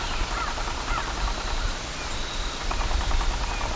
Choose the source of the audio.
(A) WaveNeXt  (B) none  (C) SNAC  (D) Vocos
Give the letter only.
B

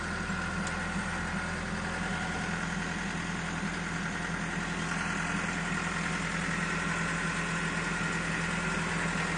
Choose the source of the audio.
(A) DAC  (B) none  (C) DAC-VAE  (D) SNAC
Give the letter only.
B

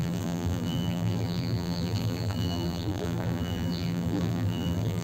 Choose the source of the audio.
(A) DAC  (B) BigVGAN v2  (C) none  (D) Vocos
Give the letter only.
B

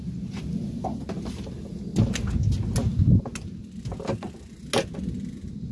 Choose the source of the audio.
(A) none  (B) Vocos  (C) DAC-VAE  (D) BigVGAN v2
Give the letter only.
A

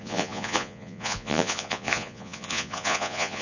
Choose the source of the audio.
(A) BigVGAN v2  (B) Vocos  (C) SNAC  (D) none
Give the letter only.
B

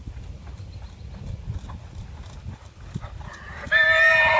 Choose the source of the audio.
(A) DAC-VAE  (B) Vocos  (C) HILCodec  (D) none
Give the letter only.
D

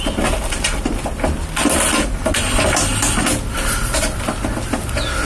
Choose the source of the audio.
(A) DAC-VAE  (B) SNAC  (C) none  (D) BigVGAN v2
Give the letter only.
C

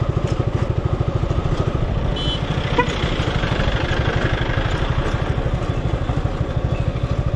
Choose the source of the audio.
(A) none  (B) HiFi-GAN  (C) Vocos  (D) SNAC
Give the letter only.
A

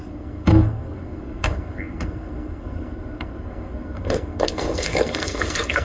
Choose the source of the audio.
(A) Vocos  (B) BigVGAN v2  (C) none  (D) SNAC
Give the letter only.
D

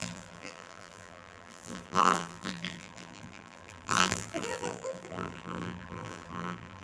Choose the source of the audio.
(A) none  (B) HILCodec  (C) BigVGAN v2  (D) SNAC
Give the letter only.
C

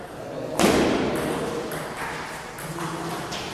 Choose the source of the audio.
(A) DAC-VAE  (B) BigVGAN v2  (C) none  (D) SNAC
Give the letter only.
C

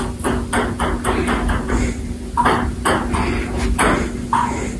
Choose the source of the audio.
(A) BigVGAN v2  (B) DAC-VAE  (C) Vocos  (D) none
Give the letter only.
D